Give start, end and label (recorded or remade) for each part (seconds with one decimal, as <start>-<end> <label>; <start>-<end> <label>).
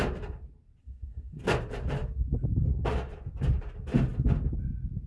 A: 0.0-0.8 recorded; 0.8-1.4 remade; 1.4-5.1 recorded